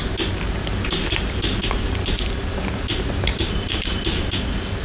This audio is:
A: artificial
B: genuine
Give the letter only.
B